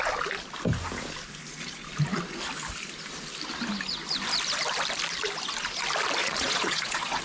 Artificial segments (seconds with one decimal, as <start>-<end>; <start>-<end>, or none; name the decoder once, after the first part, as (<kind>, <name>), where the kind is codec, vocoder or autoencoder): 6.2-7.2 (vocoder, Vocos)